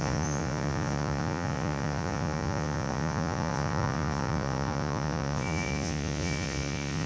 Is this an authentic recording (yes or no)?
no